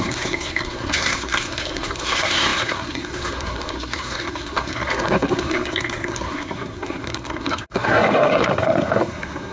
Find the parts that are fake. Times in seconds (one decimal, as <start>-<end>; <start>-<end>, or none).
0.0-9.5